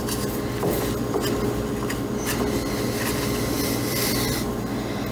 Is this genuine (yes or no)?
yes